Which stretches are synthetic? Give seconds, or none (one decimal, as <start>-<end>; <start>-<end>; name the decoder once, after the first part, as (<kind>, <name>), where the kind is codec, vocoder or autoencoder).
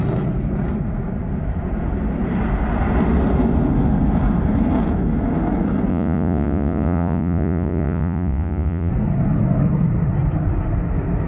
5.9-8.9 (vocoder, Vocos)